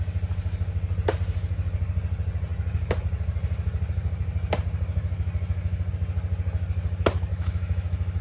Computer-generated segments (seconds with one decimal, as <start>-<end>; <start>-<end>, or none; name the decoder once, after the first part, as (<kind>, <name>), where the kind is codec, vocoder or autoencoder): 7.3-8.2 (autoencoder, DAC-VAE)